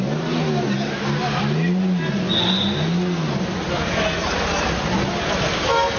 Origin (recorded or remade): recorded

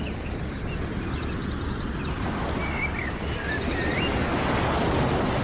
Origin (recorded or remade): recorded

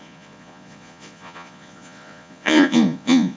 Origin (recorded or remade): remade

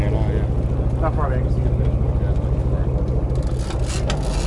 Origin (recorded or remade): recorded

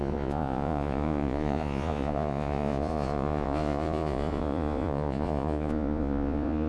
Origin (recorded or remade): remade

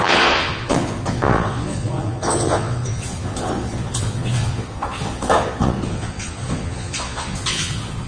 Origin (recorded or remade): remade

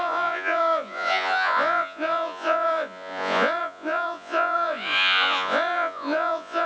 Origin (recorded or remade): remade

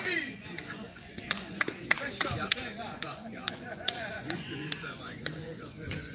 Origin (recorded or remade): remade